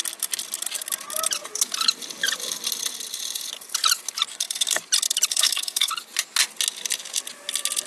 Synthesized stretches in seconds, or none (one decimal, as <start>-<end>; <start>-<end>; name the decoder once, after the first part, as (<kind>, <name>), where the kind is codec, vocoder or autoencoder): 4.3-4.8 (codec, SNAC); 5.3-5.9